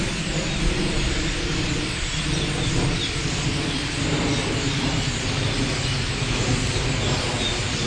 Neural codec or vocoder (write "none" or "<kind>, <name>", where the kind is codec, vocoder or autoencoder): none